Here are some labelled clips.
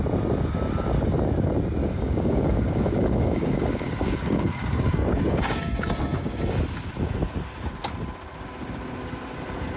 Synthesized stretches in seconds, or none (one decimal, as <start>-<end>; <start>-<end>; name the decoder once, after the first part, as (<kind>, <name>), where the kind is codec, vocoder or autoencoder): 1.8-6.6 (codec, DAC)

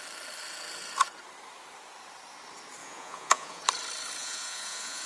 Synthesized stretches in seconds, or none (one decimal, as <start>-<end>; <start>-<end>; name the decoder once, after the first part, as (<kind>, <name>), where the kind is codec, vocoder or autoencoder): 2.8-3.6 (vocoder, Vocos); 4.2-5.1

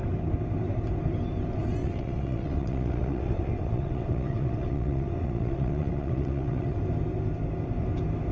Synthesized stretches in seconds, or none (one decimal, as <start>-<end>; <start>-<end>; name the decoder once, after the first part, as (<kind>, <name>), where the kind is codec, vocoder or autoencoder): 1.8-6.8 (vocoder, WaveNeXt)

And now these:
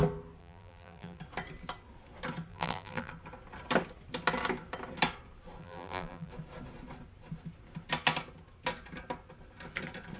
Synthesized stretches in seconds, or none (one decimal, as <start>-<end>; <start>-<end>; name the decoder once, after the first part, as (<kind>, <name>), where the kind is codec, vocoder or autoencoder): 0.4-1.2 (vocoder, BigVGAN v2); 2.5-3.1; 5.6-6.3